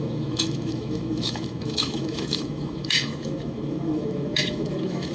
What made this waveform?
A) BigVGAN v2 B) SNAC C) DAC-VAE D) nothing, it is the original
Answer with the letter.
C